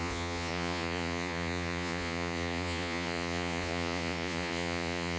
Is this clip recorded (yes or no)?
no